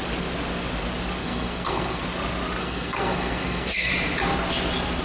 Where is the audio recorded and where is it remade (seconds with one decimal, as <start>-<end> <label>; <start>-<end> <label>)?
0.0-1.2 recorded; 1.2-2.0 remade; 2.0-2.6 recorded; 2.6-3.9 remade; 3.9-5.0 recorded